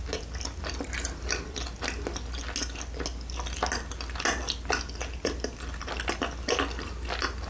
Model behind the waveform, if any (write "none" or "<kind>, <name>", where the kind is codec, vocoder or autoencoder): none